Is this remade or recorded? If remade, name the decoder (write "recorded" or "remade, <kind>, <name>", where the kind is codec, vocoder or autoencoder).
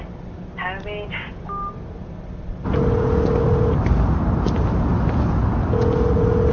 recorded